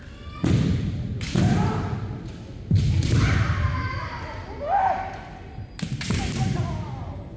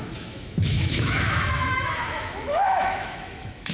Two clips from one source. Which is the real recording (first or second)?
first